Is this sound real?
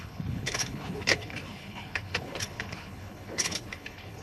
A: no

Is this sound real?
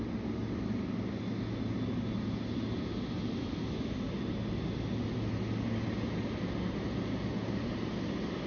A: yes